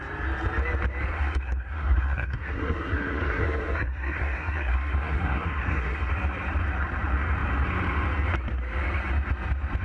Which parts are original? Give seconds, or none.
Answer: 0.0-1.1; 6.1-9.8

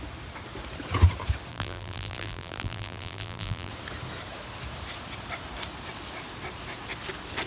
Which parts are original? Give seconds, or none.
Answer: 0.0-1.5; 3.7-7.5

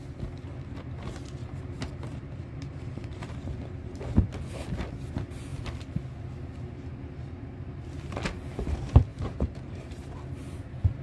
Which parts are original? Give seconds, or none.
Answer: 0.0-1.4; 4.3-9.1; 10.1-11.0

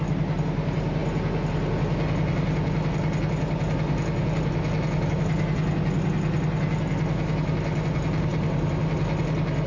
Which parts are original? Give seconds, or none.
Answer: 0.0-9.7

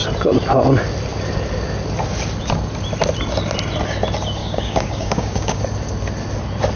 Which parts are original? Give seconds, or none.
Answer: 0.0-4.4; 5.6-6.8

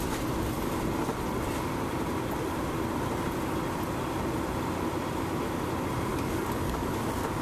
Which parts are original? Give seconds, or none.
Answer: 0.0-6.1; 7.0-7.4

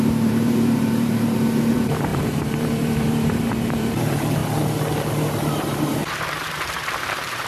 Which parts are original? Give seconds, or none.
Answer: 4.4-5.1